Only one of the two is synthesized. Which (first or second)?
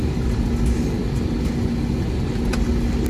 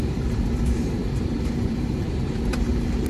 second